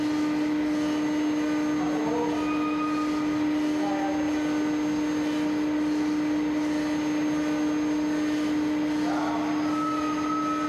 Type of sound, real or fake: real